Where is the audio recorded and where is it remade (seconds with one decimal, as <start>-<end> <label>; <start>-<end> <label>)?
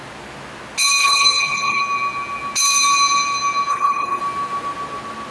0.0-1.0 recorded; 1.0-1.8 remade; 1.8-3.7 recorded; 3.7-4.2 remade; 4.2-5.3 recorded